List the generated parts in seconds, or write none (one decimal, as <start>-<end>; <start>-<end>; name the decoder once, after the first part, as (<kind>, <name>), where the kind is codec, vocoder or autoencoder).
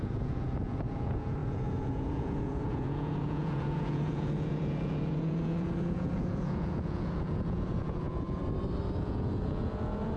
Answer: 0.0-8.4 (vocoder, Vocos); 9.0-10.2